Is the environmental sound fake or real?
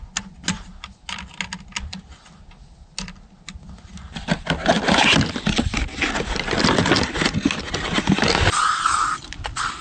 real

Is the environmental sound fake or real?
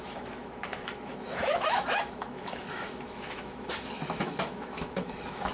fake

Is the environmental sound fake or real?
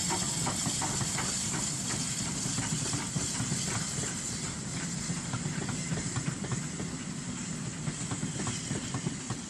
real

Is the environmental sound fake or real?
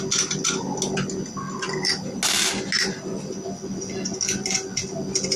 real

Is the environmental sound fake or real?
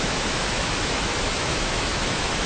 fake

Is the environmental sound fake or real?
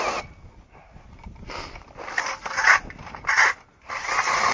real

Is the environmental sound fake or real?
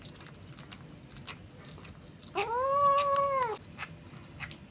real